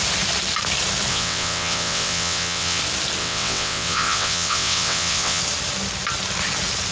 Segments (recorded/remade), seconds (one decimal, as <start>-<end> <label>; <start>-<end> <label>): 0.0-1.1 recorded; 1.1-2.8 remade; 2.8-3.2 recorded; 3.2-5.4 remade; 5.4-6.9 recorded